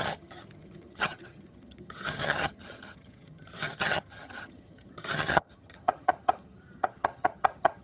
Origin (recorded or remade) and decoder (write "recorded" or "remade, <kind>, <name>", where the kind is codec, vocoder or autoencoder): remade, vocoder, HiFi-GAN